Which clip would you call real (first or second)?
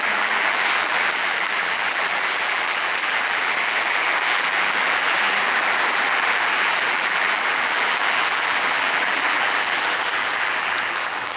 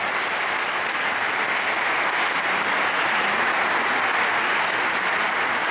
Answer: second